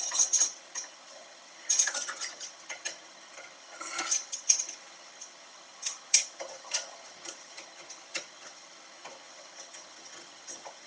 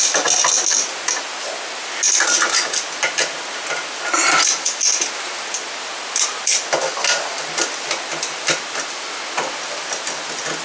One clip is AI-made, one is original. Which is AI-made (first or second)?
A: first